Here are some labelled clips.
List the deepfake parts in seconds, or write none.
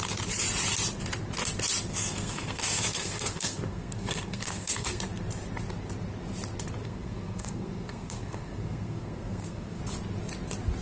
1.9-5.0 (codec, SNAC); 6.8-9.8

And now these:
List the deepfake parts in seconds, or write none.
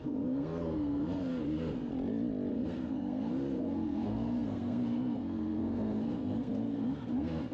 0.0-1.9 (codec, SNAC); 2.5-7.5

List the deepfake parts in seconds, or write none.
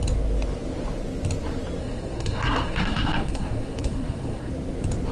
1.8-4.5 (codec, SNAC)